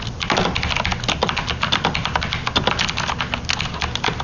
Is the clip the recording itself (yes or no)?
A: yes